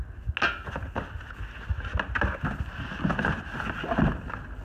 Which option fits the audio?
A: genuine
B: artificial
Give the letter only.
A